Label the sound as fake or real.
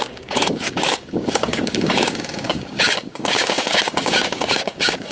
fake